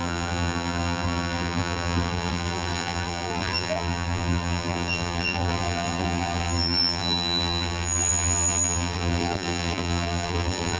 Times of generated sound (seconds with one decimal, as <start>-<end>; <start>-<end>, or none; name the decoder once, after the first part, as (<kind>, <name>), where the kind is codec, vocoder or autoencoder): 0.0-10.8 (vocoder, BigVGAN v2)